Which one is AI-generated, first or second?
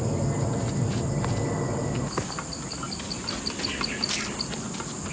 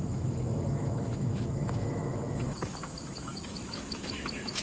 second